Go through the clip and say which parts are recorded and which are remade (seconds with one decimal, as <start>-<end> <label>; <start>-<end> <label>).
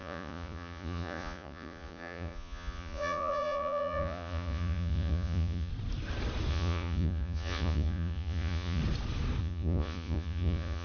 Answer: 0.0-5.7 remade; 5.7-6.5 recorded; 6.5-8.8 remade; 8.8-9.4 recorded; 9.4-10.8 remade